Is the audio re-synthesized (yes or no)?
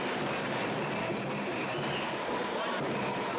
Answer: no